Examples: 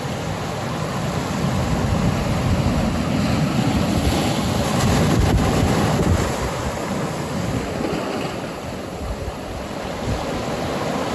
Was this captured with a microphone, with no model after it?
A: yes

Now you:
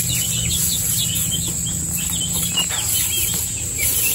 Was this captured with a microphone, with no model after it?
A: yes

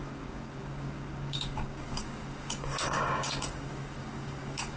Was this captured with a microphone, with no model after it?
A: no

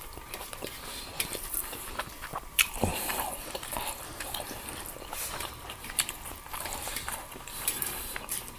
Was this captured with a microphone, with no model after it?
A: no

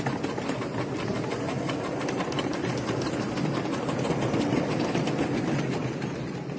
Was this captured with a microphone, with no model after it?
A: yes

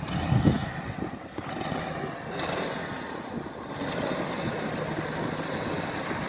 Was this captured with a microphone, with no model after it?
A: yes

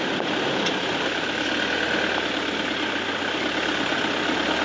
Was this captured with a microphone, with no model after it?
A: yes